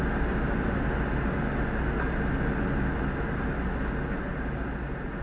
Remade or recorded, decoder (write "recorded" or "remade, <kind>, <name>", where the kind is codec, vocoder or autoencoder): recorded